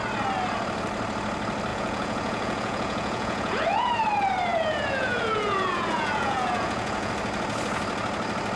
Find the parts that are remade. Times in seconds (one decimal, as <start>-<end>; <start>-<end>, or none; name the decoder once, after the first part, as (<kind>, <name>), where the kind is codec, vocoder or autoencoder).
1.7-4.0 (vocoder, Vocos); 4.5-7.1